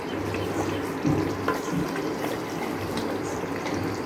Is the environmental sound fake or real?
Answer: real